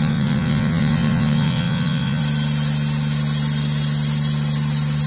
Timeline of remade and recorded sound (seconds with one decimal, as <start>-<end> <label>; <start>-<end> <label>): 0.0-2.2 remade; 2.2-5.1 recorded